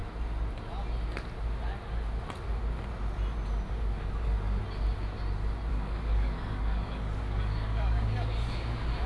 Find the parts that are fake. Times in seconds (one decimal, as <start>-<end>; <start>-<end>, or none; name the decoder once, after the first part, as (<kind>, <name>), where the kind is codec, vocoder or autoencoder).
3.7-4.6 (codec, DAC); 5.7-9.1